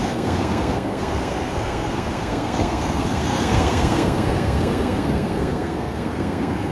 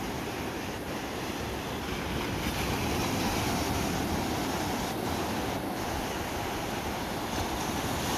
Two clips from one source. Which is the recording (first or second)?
second